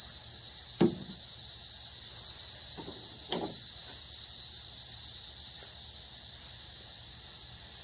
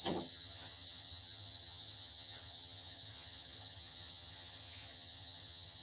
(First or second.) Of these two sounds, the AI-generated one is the second